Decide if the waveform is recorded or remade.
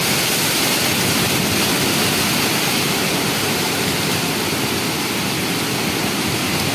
remade